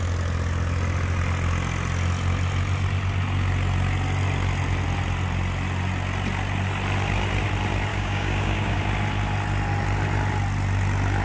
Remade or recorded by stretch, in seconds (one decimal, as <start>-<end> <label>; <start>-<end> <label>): 0.0-7.9 recorded; 7.9-8.8 remade; 8.8-11.2 recorded